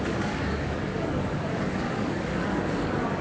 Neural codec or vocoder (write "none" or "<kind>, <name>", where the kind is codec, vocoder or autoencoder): codec, DAC